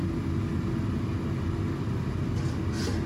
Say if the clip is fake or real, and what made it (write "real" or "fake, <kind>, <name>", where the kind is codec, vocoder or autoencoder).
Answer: real